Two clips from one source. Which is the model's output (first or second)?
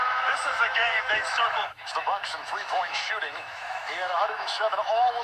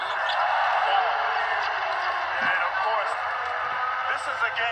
first